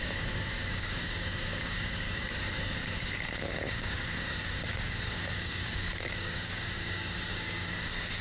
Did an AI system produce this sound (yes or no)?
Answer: yes